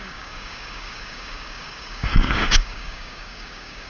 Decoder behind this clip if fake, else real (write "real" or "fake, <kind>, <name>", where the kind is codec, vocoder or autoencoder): fake, codec, DAC